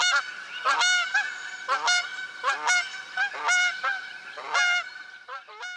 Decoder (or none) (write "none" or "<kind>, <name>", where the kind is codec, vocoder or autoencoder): none